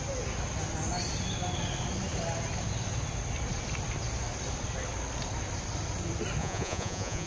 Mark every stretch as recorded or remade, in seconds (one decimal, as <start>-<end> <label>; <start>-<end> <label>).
0.0-6.4 recorded; 6.4-7.3 remade